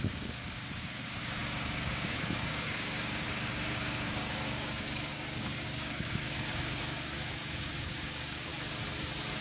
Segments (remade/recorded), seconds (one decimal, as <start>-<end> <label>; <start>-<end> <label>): 0.0-8.5 remade; 8.5-9.4 recorded